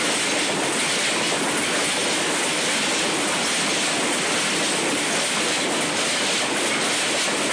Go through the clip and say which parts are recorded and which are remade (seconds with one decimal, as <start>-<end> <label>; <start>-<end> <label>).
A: 0.0-7.5 recorded